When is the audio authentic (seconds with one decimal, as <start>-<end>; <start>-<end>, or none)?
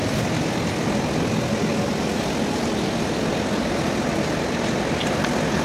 0.0-5.6